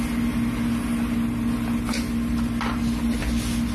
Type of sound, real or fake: real